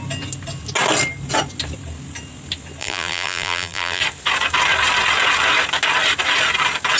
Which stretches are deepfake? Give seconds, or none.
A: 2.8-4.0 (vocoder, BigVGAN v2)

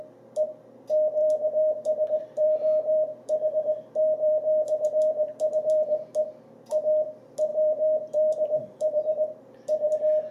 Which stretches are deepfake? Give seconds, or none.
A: 1.2-6.1 (vocoder, BigVGAN v2); 7.5-9.9

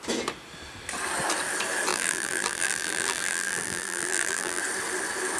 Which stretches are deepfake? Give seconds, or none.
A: 1.9-4.6 (vocoder, BigVGAN v2)

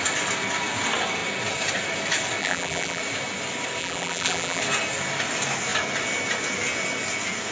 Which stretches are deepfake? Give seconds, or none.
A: 2.4-3.0 (vocoder, BigVGAN v2); 3.8-4.6

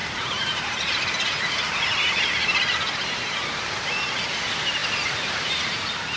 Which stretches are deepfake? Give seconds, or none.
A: 0.0-3.7 (vocoder, BigVGAN v2)

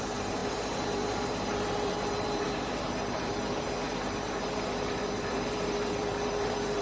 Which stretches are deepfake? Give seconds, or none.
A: 0.0-6.8 (vocoder, BigVGAN v2)